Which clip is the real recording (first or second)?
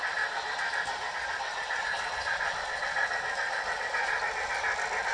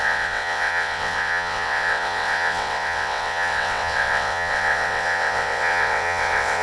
first